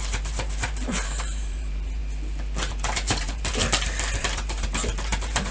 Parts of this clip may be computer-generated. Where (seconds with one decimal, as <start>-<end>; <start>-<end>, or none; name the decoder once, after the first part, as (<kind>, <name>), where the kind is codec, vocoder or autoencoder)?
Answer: 0.0-2.0 (vocoder, BigVGAN v2); 2.7-3.6; 4.2-5.5